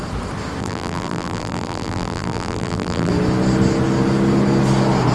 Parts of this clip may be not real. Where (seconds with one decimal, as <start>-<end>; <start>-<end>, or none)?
0.6-3.1